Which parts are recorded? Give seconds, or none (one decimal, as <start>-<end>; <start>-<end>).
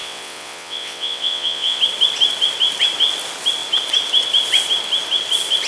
1.8-5.7